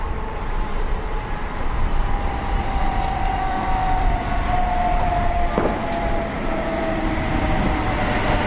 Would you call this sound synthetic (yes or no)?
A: yes